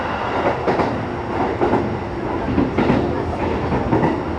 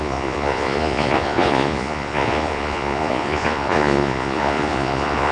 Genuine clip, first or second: first